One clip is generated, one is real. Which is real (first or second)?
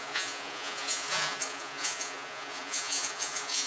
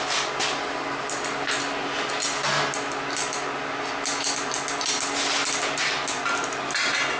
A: second